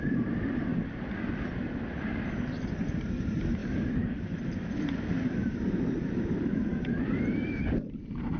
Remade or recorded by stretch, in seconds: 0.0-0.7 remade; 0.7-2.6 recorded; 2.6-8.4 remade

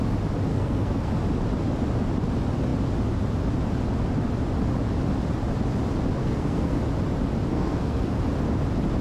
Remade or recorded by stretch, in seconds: 0.0-0.5 recorded; 0.5-1.1 remade; 1.1-6.2 recorded; 6.2-6.8 remade; 6.8-7.5 recorded; 7.5-8.2 remade; 8.2-9.0 recorded

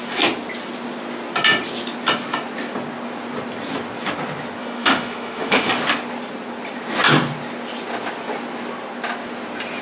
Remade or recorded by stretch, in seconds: 0.0-4.6 recorded; 4.6-5.7 remade; 5.7-9.8 recorded

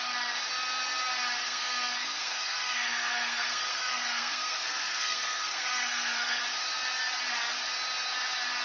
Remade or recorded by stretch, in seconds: 0.0-1.4 recorded; 1.4-6.4 remade; 6.4-8.6 recorded

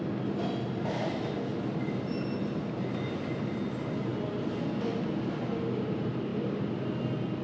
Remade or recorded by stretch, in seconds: 0.0-7.4 recorded